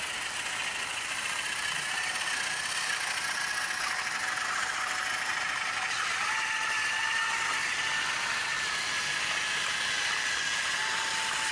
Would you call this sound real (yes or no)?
yes